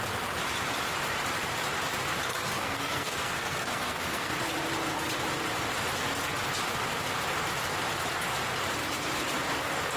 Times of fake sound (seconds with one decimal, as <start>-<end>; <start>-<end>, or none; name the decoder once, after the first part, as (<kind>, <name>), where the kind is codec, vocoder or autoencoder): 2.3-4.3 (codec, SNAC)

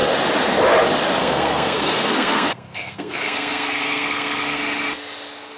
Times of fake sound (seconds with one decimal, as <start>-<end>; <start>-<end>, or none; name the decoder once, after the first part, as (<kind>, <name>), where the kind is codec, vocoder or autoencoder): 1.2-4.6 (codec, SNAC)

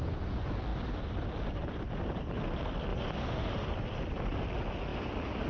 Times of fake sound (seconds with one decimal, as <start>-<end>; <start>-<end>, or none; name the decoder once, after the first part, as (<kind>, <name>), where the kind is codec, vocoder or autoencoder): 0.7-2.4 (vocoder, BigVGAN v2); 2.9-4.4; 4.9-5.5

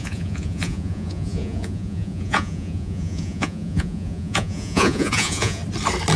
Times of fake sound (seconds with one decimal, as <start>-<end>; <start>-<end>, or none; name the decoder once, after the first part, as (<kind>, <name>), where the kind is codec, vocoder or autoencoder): 0.0-5.6 (vocoder, Vocos)

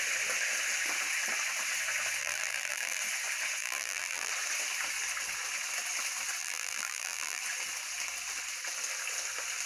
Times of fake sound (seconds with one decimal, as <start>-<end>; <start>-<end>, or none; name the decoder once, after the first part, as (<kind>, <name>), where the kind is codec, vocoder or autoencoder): 2.2-3.0 (vocoder, BigVGAN v2); 3.6-4.3; 6.4-7.4